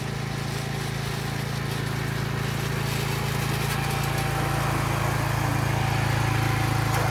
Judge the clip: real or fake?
real